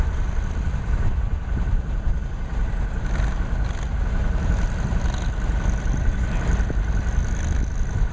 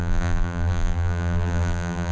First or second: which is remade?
second